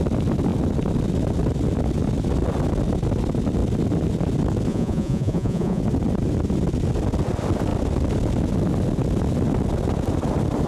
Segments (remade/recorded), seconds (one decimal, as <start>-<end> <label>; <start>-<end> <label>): 0.0-4.7 recorded; 4.7-5.8 remade; 5.8-10.7 recorded